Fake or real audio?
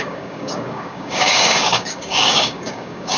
fake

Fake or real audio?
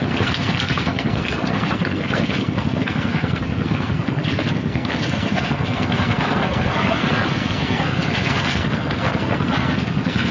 fake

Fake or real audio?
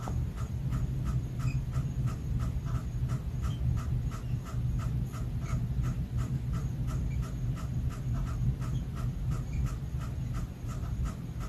real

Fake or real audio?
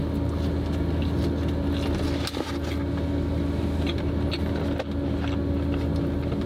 real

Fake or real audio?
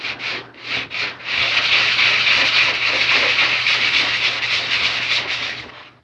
real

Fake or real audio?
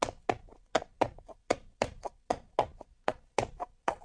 real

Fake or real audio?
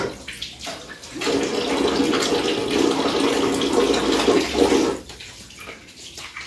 real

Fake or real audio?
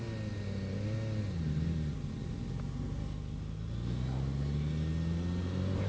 real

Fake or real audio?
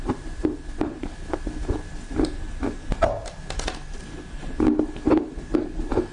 real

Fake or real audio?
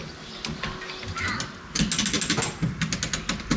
real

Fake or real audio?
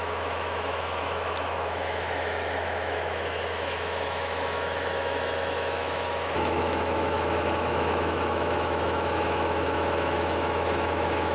fake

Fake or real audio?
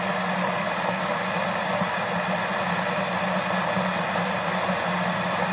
real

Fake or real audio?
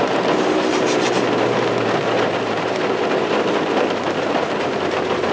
fake